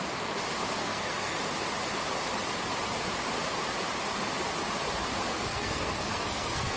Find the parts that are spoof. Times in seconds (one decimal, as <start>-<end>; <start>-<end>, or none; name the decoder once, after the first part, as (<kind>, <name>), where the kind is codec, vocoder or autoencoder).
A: 0.8-1.4 (codec, SNAC); 5.3-6.8